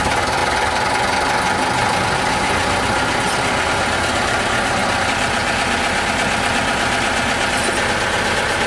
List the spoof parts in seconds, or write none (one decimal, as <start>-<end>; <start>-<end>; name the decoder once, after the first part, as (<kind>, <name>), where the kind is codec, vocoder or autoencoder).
none

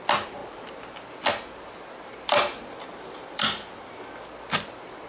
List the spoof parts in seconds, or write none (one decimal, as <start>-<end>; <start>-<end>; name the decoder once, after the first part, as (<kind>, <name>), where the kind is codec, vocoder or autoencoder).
2.5-4.3 (vocoder, BigVGAN v2)

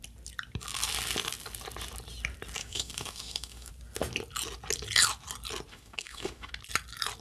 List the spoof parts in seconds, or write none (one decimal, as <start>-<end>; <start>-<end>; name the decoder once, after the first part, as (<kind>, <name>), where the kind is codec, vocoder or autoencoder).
2.6-3.7 (autoencoder, DAC-VAE); 5.7-6.5

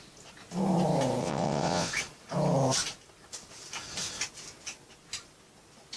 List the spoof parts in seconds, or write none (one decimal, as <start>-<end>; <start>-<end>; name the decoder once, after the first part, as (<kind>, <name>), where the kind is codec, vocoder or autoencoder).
1.2-1.9 (vocoder, WaveNeXt)

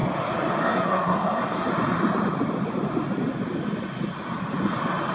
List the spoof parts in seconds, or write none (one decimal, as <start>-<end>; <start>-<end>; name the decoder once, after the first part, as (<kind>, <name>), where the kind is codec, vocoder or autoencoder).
0.6-1.7 (codec, SNAC)

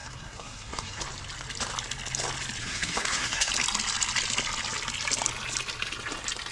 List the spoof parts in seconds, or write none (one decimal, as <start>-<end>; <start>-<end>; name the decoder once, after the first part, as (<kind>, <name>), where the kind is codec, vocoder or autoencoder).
0.0-1.0 (codec, SNAC); 2.6-3.5

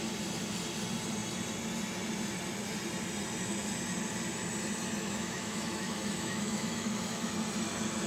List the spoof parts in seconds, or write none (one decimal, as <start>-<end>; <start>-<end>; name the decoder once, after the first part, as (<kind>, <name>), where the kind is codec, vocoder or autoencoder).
5.0-7.3 (autoencoder, DAC-VAE)